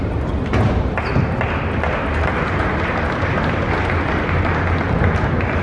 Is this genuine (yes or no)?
yes